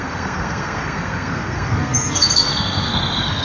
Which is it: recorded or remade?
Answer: remade